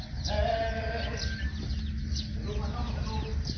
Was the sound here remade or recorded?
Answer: recorded